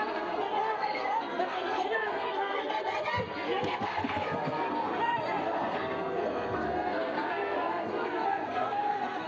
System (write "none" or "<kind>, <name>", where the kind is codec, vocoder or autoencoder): codec, SNAC